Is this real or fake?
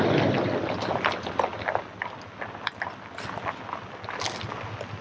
real